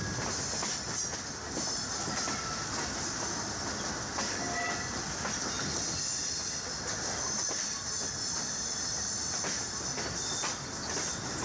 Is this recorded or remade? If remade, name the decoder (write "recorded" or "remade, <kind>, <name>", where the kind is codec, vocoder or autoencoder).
recorded